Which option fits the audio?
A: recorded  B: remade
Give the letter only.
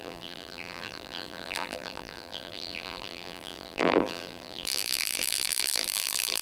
B